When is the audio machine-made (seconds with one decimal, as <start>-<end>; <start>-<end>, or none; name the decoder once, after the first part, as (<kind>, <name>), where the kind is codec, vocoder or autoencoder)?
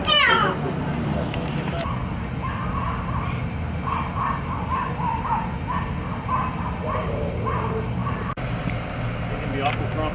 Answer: none